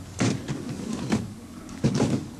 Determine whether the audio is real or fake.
fake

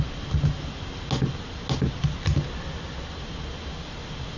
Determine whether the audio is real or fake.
real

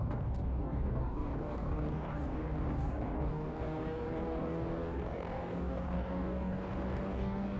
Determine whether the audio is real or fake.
fake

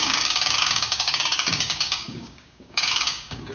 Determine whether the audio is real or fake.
fake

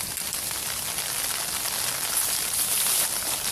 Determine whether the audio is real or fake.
real